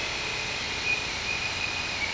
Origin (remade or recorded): recorded